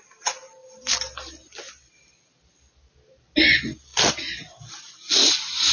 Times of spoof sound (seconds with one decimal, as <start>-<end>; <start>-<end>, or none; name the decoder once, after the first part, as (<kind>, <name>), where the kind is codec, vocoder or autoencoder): 0.6-2.7 (vocoder, BigVGAN v2); 3.9-5.3